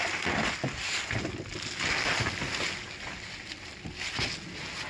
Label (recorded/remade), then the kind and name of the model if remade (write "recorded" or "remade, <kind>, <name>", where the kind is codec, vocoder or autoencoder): recorded